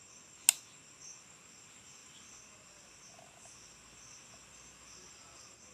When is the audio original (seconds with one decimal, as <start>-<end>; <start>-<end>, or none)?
0.0-5.7